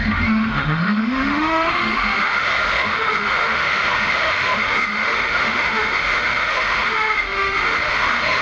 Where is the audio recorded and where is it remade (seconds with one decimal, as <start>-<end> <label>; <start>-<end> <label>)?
0.0-8.4 remade